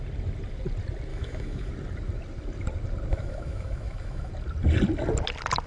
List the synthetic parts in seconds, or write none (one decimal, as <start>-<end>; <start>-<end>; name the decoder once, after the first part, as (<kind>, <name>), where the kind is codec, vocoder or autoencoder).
1.1-1.7 (autoencoder, DAC-VAE); 3.1-4.3